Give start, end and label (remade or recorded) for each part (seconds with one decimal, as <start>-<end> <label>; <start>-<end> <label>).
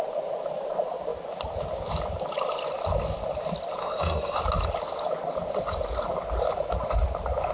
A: 0.0-3.8 recorded; 3.8-4.4 remade; 4.4-7.5 recorded